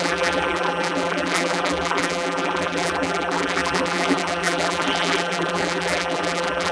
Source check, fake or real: fake